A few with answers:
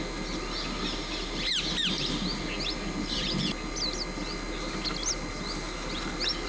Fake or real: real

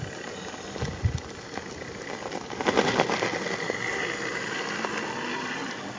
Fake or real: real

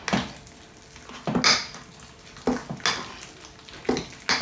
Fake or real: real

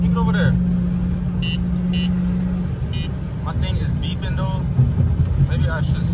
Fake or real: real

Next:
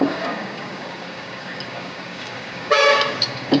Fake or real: fake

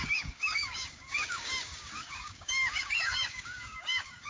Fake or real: fake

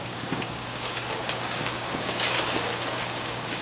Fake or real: fake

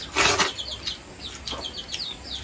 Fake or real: real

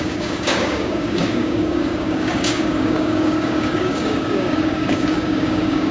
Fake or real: fake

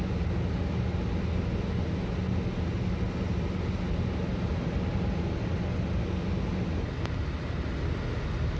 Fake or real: real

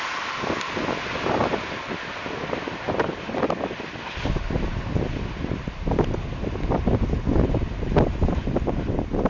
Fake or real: real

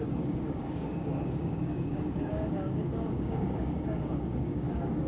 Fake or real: fake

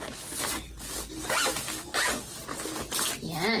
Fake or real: real